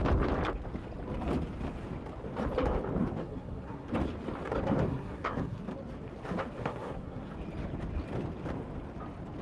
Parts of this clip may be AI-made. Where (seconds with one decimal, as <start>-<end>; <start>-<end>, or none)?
3.2-3.9; 4.9-5.6; 6.6-7.3